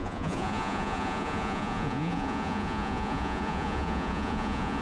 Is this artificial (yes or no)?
yes